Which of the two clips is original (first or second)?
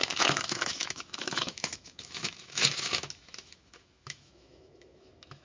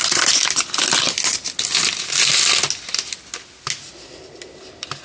second